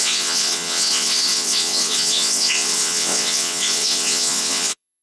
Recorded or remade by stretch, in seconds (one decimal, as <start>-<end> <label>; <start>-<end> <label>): 0.0-5.0 remade